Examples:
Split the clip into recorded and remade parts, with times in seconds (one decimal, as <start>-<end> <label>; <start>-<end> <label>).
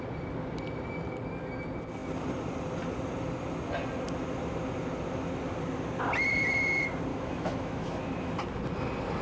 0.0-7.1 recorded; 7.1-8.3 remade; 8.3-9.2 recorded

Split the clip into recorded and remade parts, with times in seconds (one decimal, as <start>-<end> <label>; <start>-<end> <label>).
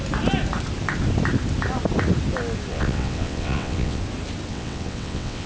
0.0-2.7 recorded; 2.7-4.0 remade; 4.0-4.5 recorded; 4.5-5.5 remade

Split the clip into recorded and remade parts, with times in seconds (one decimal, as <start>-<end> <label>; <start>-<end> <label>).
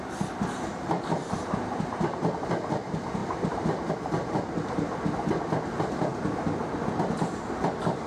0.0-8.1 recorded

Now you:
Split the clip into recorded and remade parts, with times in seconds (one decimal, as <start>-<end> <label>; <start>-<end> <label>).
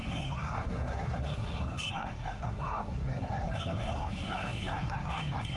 0.0-5.6 remade